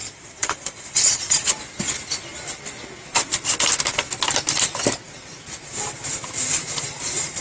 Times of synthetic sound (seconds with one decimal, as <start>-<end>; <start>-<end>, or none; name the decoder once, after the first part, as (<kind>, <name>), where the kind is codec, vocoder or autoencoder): 0.0-1.5 (vocoder, Vocos)